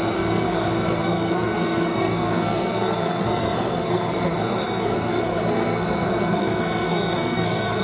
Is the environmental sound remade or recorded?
remade